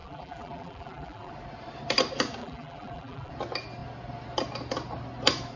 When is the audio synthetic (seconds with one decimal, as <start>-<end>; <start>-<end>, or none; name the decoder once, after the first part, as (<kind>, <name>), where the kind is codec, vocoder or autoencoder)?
0.0-1.3 (vocoder, BigVGAN v2); 2.4-3.3